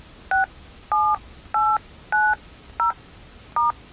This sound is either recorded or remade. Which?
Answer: recorded